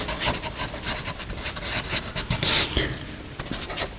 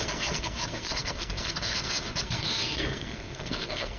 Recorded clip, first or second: first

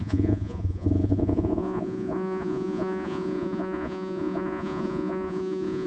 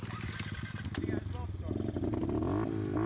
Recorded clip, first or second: second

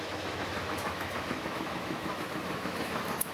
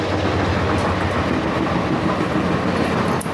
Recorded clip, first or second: second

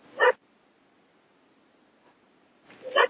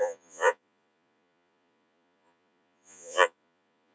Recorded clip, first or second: first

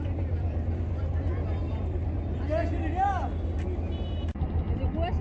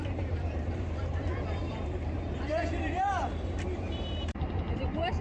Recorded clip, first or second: first